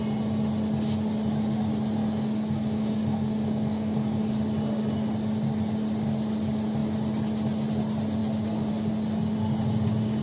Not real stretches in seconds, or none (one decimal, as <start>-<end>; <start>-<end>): 2.0-4.4

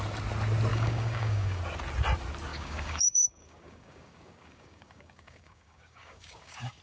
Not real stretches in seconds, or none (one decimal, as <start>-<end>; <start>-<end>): 0.7-1.6; 2.5-6.8

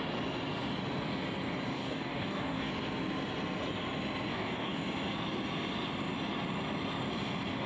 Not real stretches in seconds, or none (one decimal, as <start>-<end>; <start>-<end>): 1.7-2.7; 4.3-4.8

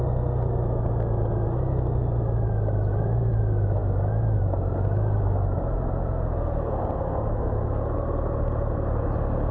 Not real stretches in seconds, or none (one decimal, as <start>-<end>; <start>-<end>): none